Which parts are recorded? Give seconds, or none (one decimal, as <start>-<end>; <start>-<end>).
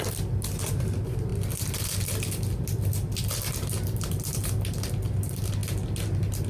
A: 0.0-6.5